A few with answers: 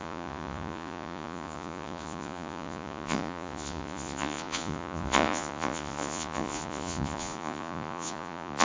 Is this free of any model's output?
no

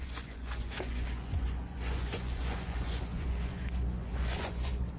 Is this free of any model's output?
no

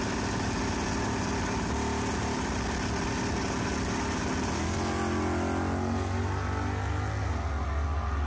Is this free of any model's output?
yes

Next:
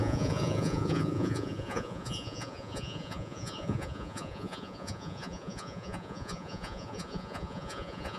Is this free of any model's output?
no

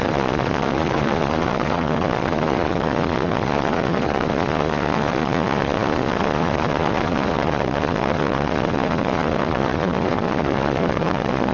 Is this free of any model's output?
no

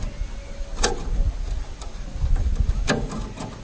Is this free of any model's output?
yes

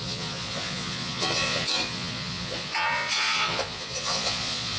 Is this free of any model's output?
no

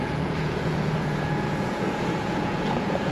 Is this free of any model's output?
no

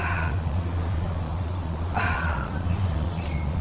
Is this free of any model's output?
no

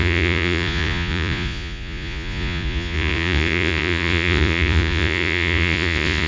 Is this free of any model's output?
no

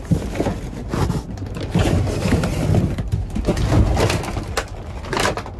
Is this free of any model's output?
yes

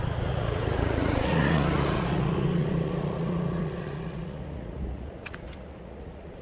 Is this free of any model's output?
no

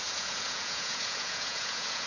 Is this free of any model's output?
no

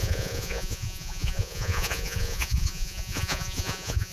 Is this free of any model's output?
no